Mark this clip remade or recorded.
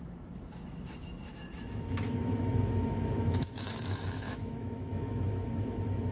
remade